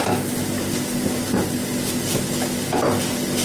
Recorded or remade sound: recorded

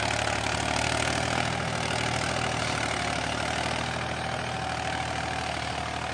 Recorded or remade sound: recorded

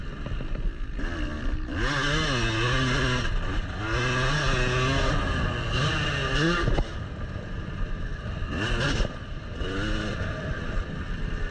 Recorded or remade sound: recorded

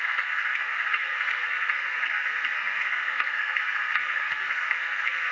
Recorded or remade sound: remade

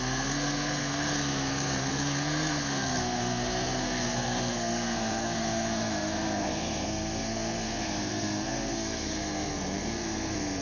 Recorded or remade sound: remade